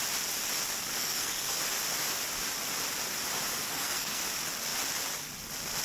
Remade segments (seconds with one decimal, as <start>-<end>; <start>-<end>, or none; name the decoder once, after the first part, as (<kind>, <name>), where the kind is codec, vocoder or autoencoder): 1.0-1.6 (codec, SNAC); 3.5-4.2